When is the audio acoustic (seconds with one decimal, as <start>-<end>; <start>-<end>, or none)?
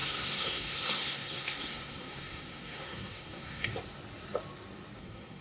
3.7-5.0